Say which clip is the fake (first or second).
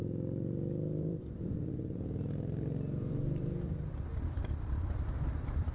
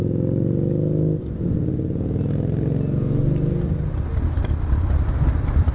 first